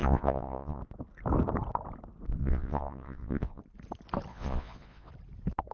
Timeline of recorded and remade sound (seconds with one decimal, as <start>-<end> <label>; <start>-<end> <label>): 0.0-0.8 remade; 0.8-2.4 recorded; 2.4-3.6 remade; 3.6-4.3 recorded; 4.3-5.1 remade; 5.1-5.7 recorded